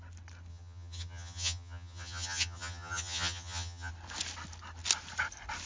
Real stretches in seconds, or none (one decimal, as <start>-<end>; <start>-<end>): 0.0-0.5; 3.9-5.7